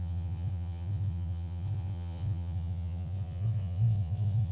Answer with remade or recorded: remade